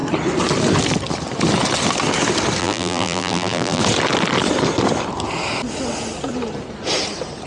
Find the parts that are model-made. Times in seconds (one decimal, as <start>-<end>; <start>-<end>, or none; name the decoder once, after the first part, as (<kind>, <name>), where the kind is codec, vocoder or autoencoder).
2.6-3.8 (vocoder, BigVGAN v2)